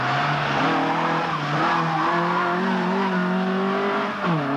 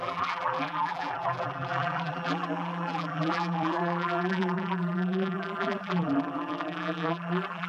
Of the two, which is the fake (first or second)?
second